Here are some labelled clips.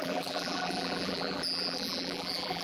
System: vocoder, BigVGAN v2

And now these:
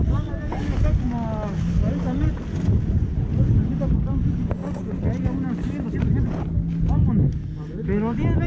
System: none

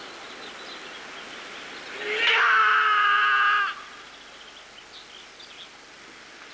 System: none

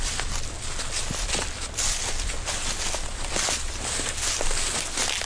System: none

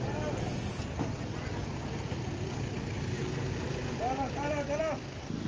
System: none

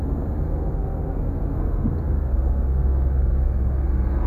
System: codec, SNAC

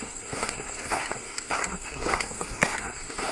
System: codec, SNAC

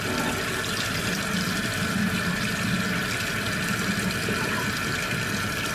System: none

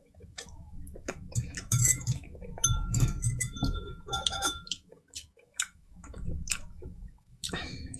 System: autoencoder, DAC-VAE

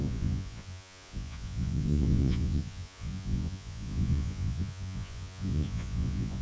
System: vocoder, Vocos